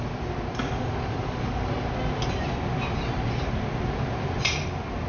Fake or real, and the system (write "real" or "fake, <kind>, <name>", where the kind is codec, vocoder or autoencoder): real